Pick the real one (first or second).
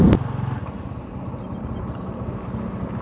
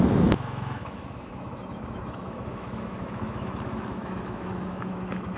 first